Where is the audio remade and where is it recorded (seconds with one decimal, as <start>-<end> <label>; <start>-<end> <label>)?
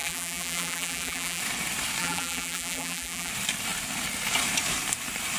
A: 0.0-1.4 remade; 1.4-2.0 recorded; 2.0-3.3 remade; 3.3-5.4 recorded